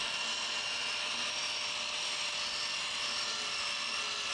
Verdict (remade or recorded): recorded